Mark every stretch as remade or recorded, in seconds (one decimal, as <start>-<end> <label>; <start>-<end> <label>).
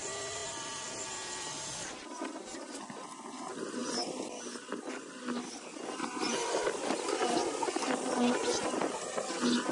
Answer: 0.0-9.7 recorded